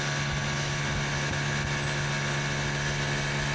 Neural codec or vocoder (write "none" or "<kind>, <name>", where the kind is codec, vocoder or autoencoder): none